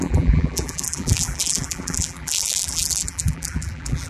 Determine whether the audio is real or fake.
fake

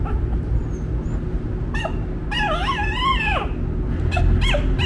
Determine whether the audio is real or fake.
real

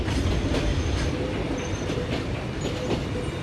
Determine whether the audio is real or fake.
real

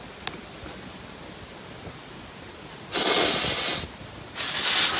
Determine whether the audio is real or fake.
real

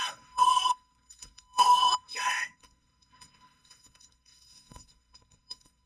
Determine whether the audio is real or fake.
fake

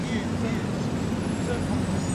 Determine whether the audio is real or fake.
real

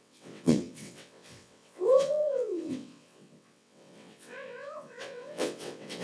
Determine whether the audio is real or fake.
fake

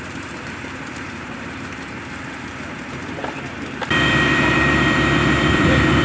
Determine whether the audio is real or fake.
fake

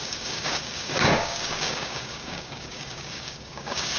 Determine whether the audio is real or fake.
fake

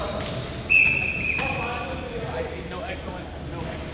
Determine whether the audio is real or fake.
real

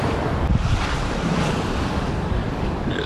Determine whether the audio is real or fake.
fake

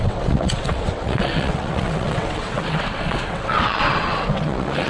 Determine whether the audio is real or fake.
fake